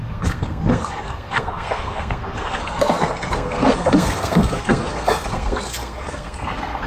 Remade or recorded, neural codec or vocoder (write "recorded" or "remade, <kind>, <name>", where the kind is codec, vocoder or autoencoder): remade, codec, SNAC